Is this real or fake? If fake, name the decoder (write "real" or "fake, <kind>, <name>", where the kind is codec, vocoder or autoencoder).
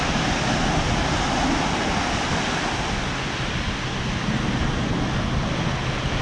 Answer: real